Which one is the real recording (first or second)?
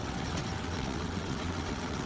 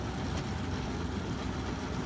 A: second